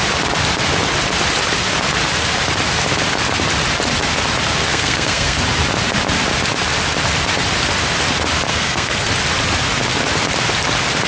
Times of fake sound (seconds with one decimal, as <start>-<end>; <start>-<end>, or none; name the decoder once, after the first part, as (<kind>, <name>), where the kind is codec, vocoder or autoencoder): 4.7-5.4 (codec, SNAC); 8.5-9.1